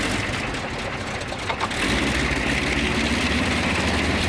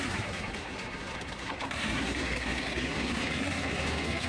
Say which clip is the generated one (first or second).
second